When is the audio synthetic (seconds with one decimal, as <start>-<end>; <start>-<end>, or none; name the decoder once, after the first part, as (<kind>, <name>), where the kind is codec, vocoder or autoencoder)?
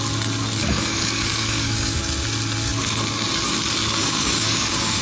0.6-2.0 (codec, DAC); 4.0-5.0